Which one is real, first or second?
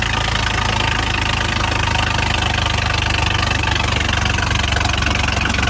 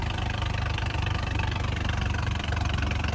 first